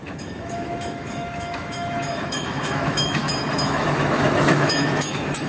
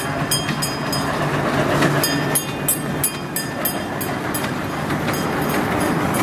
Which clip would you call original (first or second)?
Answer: second